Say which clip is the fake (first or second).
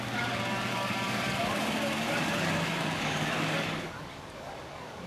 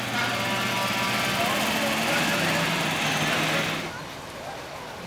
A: first